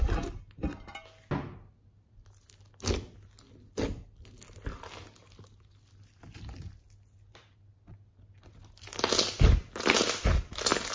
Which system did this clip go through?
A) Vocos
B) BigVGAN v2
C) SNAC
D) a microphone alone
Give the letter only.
D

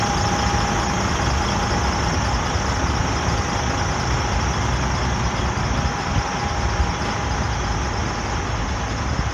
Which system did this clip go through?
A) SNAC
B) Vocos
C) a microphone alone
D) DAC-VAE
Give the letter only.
C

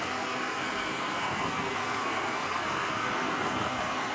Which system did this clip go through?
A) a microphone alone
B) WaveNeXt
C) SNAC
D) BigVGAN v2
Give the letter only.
C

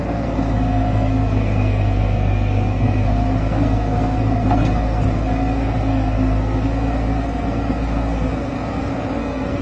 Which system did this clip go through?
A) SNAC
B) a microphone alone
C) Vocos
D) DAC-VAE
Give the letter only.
A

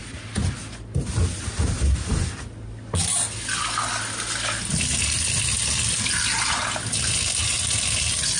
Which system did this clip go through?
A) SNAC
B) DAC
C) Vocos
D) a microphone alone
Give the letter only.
D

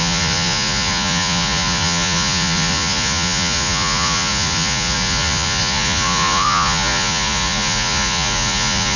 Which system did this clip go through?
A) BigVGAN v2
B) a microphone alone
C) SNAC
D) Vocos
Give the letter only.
D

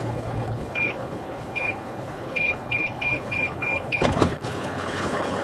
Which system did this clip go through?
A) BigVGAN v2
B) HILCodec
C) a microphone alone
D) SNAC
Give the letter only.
B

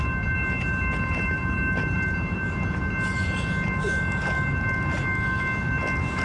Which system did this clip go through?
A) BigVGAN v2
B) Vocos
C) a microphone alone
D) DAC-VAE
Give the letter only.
C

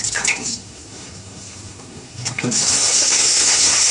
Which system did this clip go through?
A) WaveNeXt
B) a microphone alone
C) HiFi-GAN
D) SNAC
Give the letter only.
D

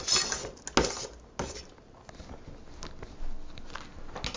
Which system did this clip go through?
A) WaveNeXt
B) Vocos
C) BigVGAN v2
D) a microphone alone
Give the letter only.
D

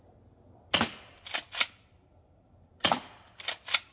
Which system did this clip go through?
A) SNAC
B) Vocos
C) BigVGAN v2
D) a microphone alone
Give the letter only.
D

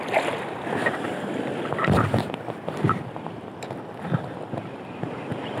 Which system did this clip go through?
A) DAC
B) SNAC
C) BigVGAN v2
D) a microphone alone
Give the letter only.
D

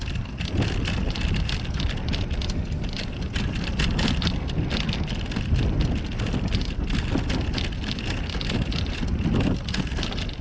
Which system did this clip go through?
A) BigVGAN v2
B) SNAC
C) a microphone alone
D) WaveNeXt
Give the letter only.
C